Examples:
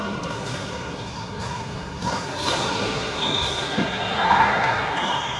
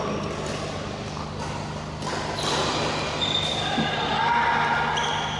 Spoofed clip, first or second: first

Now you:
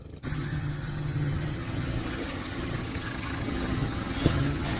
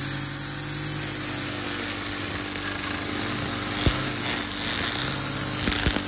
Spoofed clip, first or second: first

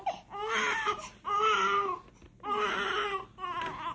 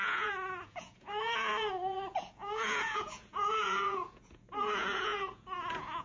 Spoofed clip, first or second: second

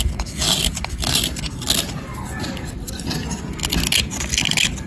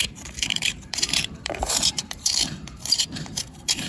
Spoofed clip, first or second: second